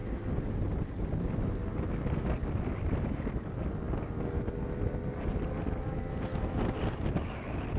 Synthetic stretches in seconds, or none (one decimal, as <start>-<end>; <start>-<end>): none